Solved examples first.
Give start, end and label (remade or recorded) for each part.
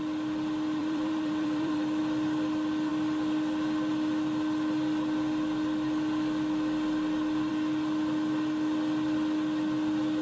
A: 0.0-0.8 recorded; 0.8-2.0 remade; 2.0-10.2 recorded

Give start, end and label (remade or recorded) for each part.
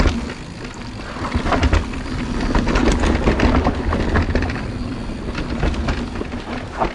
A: 0.0-6.9 recorded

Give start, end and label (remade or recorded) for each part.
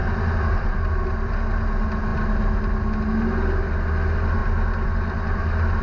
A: 0.0-1.3 remade; 1.3-4.4 recorded; 4.4-5.8 remade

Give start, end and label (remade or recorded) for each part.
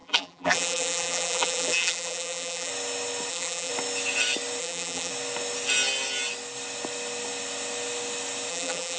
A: 0.0-2.7 remade; 2.7-3.3 recorded; 3.3-3.7 remade; 3.7-4.6 recorded; 4.6-5.1 remade; 5.1-8.5 recorded; 8.5-9.0 remade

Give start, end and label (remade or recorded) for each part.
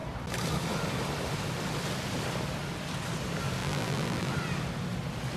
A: 0.0-3.6 recorded; 3.6-4.3 remade; 4.3-5.4 recorded